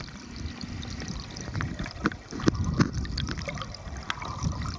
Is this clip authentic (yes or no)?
yes